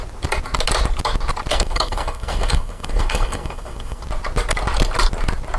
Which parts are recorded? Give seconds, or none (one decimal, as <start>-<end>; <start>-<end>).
0.0-1.5; 4.0-5.6